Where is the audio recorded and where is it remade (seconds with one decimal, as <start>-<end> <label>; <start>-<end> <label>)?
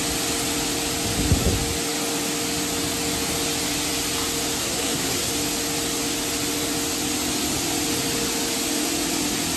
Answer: 0.0-4.6 recorded; 4.6-5.3 remade; 5.3-9.6 recorded